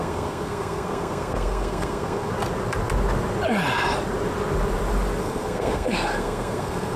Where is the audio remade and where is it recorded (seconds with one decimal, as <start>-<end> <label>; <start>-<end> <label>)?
0.0-2.3 remade; 2.3-5.2 recorded; 5.2-7.0 remade